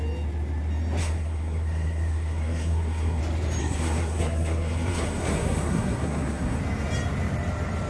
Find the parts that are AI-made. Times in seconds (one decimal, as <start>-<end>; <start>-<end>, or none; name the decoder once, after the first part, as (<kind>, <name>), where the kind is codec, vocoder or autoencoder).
1.0-3.2 (codec, SNAC); 3.6-6.6